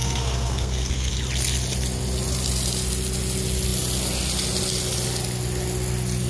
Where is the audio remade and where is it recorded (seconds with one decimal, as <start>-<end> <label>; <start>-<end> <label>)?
0.0-1.1 remade; 1.1-6.3 recorded